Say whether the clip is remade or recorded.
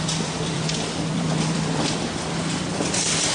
remade